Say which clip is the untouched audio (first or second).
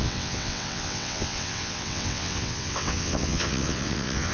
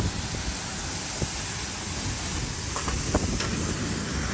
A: second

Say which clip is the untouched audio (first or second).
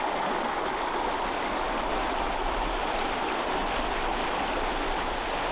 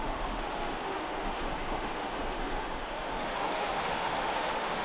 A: first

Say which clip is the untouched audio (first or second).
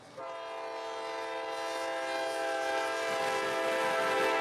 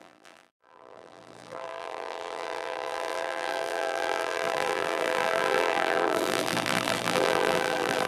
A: first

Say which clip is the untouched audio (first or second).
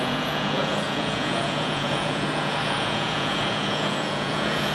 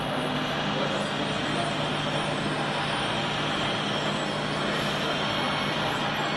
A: second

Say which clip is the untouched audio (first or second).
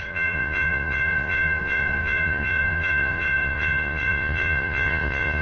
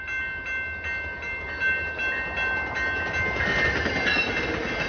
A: second